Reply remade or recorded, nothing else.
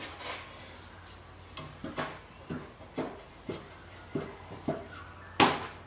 recorded